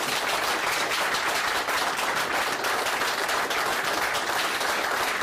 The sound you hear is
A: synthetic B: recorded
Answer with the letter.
B